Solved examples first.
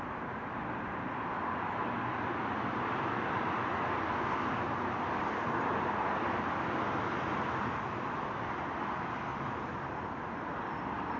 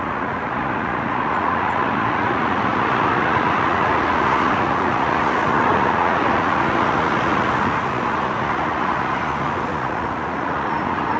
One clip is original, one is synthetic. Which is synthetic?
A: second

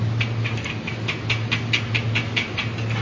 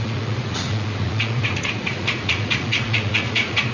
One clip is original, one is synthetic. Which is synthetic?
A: second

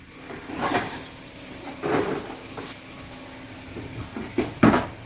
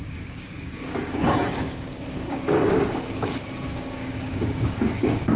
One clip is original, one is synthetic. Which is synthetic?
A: second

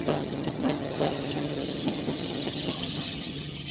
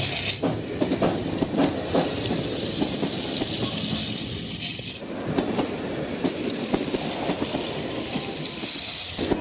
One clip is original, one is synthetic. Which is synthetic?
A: first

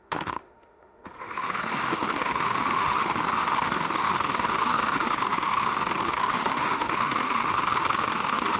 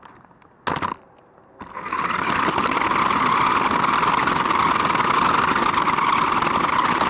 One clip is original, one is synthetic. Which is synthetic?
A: first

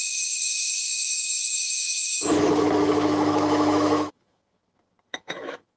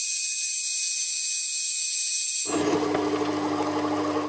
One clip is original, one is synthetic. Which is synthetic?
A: first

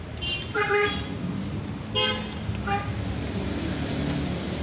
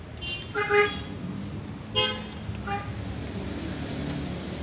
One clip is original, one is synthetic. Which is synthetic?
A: first